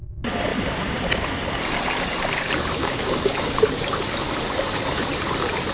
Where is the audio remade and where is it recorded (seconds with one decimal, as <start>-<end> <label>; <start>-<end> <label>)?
0.0-2.8 recorded; 2.8-3.7 remade; 3.7-5.7 recorded